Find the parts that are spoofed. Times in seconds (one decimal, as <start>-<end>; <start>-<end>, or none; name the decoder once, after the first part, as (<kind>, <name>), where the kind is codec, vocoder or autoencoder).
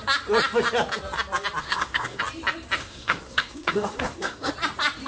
1.6-2.2 (codec, SNAC); 2.8-4.5